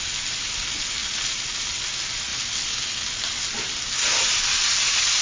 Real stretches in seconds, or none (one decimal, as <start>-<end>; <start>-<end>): 0.0-5.2